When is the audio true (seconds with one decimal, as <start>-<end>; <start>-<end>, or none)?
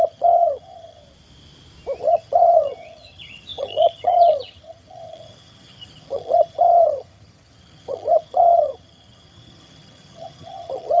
1.0-2.0